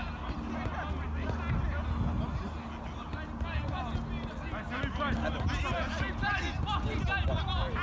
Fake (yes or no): no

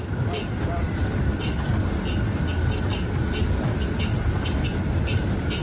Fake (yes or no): no